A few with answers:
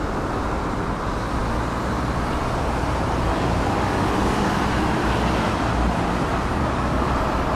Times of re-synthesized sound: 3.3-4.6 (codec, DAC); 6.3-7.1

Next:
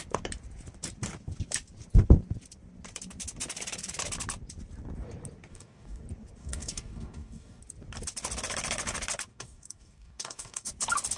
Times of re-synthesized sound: 5.5-6.0 (codec, DAC); 6.4-7.6; 9.3-10.7

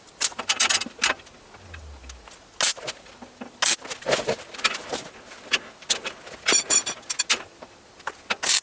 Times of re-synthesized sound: none

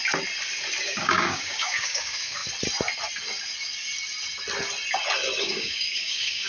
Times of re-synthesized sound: 0.8-2.4 (codec, DAC); 5.4-6.5